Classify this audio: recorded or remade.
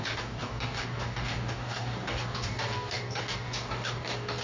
remade